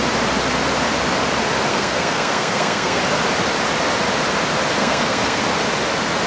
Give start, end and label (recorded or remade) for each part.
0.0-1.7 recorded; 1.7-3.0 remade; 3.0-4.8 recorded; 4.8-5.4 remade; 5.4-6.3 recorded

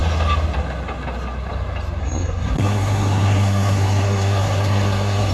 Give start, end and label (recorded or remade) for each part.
0.0-2.0 recorded; 2.0-5.3 remade